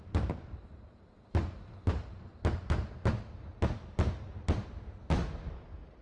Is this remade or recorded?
recorded